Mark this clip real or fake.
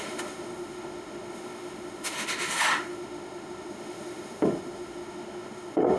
fake